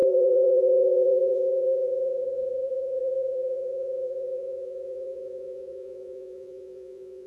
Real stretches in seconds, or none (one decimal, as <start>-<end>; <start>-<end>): none